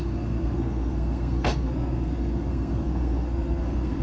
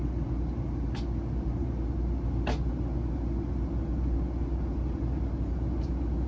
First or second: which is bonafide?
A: second